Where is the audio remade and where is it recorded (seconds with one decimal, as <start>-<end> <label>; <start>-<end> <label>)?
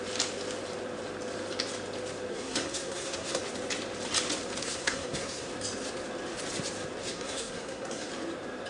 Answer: 0.0-2.3 recorded; 2.3-3.4 remade; 3.4-4.6 recorded; 4.6-5.5 remade; 5.5-7.0 recorded; 7.0-8.1 remade; 8.1-8.7 recorded